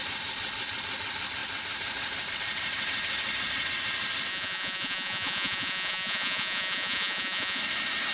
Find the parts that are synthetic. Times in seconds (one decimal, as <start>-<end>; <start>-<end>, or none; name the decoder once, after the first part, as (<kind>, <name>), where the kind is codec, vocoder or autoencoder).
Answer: 4.3-7.6 (vocoder, Vocos)